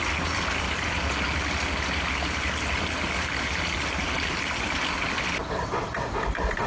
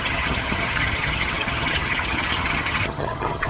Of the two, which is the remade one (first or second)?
second